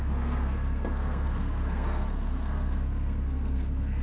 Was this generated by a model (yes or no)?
yes